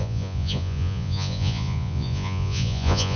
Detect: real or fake fake